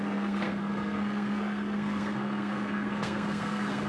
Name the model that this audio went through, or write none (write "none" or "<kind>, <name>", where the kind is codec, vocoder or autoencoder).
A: codec, SNAC